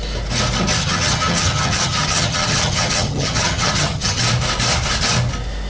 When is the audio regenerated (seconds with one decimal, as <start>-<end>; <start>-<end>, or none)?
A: 0.8-4.2